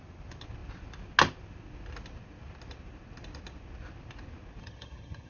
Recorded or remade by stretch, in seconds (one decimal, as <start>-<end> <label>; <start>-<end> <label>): 0.0-4.6 recorded; 4.6-5.3 remade